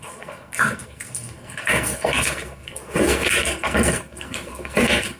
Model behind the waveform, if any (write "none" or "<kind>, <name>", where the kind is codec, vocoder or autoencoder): codec, SNAC